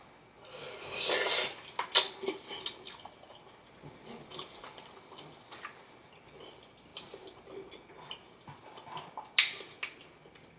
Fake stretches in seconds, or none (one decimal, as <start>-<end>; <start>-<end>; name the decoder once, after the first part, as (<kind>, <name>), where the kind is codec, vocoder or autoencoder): none

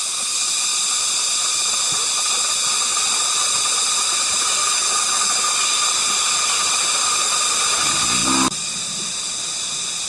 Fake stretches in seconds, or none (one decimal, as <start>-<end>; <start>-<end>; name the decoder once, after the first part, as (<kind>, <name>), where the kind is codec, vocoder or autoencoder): 4.6-5.4 (autoencoder, DAC-VAE)

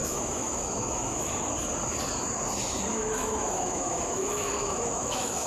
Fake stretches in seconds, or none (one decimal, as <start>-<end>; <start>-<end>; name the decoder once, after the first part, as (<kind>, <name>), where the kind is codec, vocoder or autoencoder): 0.0-1.3 (autoencoder, DAC-VAE); 2.9-5.5

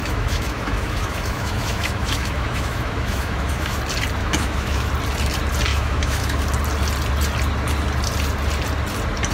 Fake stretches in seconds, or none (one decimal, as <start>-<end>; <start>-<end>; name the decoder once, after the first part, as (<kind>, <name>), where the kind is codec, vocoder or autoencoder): 0.0-3.8 (autoencoder, DAC-VAE); 4.2-4.9; 5.7-6.4

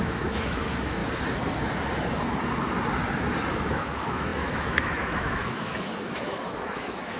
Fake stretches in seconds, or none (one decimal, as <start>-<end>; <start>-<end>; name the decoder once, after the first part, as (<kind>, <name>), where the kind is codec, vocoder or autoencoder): 0.0-1.0 (autoencoder, DAC-VAE); 3.5-7.2

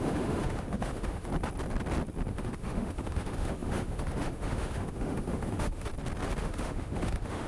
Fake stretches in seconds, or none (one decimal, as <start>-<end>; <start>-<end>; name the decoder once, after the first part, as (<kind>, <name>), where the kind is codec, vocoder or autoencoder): 0.0-1.3 (autoencoder, DAC-VAE); 2.3-5.9; 6.4-7.5